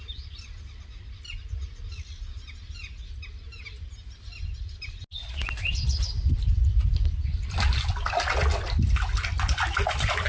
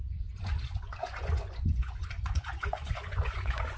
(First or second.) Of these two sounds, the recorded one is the first